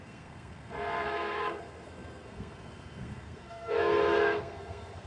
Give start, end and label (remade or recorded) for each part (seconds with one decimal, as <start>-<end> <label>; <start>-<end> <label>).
0.0-5.1 remade